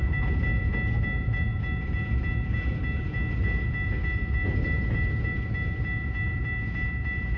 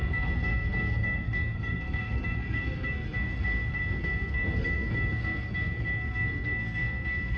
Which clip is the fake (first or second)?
second